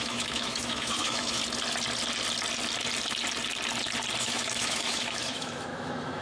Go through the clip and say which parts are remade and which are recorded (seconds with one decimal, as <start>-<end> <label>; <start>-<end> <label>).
0.0-1.4 remade; 1.4-4.2 recorded; 4.2-6.2 remade